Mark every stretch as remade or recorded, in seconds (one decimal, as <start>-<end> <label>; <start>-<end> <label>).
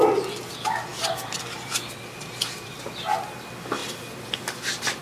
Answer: 0.0-0.9 recorded; 0.9-2.7 remade; 2.7-3.8 recorded; 3.8-5.0 remade